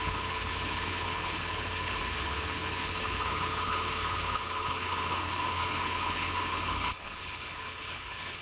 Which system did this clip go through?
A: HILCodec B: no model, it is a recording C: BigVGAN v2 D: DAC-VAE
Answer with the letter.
A